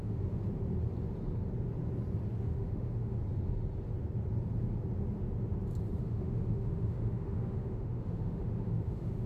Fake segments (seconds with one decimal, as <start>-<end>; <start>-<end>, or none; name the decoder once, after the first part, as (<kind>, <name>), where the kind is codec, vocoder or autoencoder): 0.0-0.4 (autoencoder, DAC-VAE); 2.4-3.2; 6.0-9.3